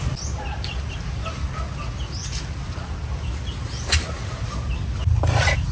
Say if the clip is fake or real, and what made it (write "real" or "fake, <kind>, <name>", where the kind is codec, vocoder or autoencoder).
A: real